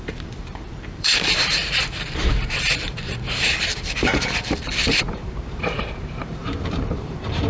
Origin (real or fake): fake